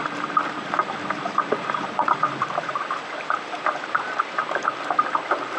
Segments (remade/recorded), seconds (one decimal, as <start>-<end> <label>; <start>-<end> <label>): 0.0-0.8 remade; 0.8-1.4 recorded; 1.4-5.6 remade